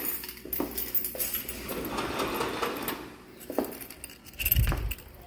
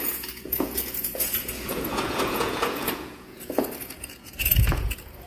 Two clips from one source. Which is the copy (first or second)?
second